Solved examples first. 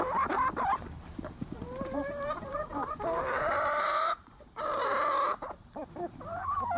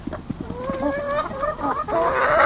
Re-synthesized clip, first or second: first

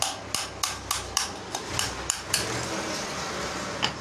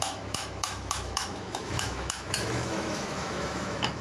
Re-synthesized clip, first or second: second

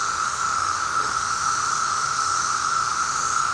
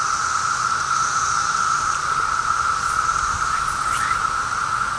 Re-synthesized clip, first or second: first